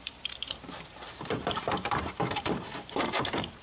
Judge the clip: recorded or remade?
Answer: remade